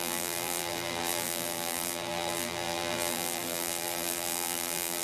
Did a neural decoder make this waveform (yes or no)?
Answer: yes